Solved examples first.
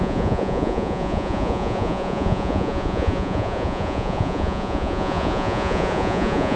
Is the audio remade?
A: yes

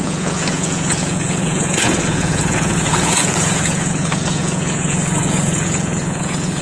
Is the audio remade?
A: yes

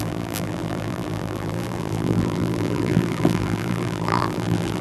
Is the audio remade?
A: yes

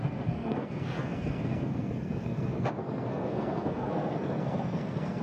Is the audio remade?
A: yes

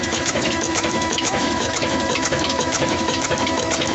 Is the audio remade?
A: yes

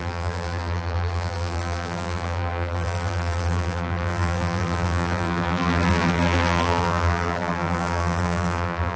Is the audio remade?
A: yes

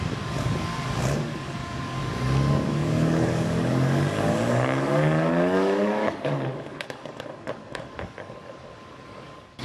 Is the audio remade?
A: yes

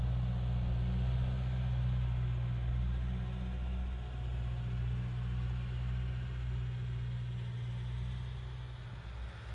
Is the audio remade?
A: no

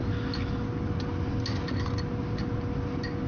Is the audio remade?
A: no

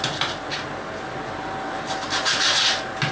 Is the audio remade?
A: no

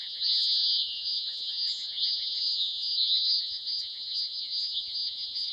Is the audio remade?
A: yes